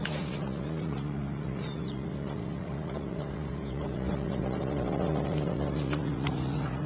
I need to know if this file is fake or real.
fake